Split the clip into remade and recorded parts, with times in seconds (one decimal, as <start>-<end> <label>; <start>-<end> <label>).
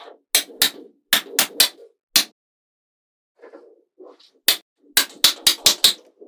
0.0-6.3 recorded